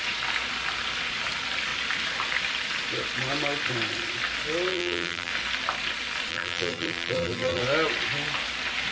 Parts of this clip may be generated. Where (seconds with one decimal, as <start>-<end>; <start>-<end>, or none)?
4.7-5.3; 6.3-7.6